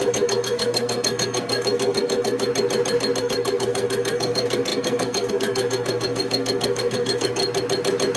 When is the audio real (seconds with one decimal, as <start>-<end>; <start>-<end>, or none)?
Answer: 2.5-3.2; 7.4-8.2